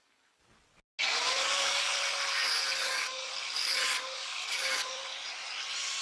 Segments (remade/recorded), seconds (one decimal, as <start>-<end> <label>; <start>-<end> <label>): 0.0-0.4 remade; 0.4-1.0 recorded; 1.0-1.9 remade; 1.9-2.8 recorded; 2.8-3.3 remade; 3.3-4.0 recorded; 4.0-5.0 remade; 5.0-6.0 recorded

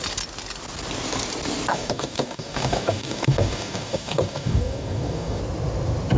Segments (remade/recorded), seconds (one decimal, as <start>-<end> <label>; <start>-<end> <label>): 0.0-1.7 recorded; 1.7-5.4 remade; 5.4-6.2 recorded

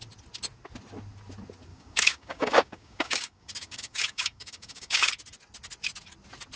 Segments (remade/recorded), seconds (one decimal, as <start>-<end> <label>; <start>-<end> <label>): 0.0-1.7 recorded; 1.7-5.1 remade; 5.1-6.6 recorded

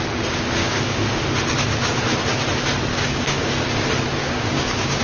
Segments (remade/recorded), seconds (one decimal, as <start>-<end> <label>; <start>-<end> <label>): 0.0-0.6 recorded; 0.6-1.2 remade; 1.2-2.9 recorded; 2.9-3.6 remade; 3.6-4.2 recorded; 4.2-5.0 remade

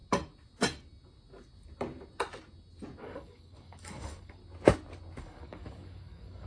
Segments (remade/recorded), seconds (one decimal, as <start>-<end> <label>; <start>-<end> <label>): 0.0-3.0 recorded; 3.0-4.4 remade; 4.4-5.2 recorded; 5.2-6.5 remade

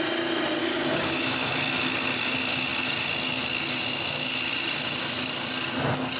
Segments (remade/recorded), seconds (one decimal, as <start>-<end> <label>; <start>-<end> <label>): 0.0-0.6 recorded; 0.6-1.5 remade; 1.5-6.2 recorded

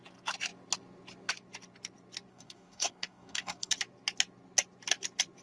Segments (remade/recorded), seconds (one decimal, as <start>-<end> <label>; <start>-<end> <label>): 0.0-2.3 recorded; 2.3-3.7 remade; 3.7-5.4 recorded